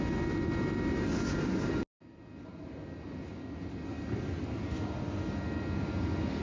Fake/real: real